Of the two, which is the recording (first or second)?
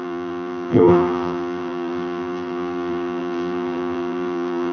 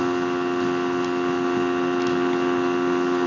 second